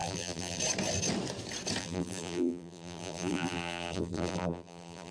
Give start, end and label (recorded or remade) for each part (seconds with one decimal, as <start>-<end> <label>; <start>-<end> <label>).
0.0-0.6 remade; 0.6-1.8 recorded; 1.8-5.1 remade